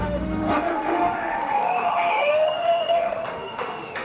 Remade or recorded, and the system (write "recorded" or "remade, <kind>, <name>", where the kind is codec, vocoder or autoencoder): remade, autoencoder, DAC-VAE